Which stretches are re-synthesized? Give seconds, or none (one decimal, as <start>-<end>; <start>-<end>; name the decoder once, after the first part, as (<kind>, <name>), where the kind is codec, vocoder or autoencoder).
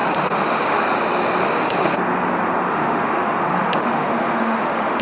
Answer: 0.0-0.8 (autoencoder, DAC-VAE); 1.4-2.0; 2.7-5.0